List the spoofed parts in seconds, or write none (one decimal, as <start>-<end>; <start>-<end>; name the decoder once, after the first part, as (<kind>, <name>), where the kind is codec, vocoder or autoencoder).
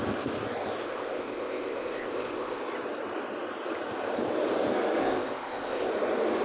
0.8-2.6 (codec, ZipCodec); 5.0-5.9